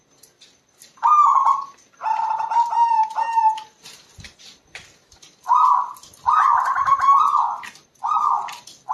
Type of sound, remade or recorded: recorded